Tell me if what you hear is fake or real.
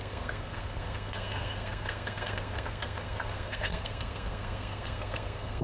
fake